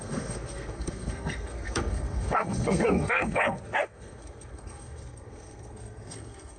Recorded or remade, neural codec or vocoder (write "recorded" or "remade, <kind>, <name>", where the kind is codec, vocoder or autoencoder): remade, codec, SNAC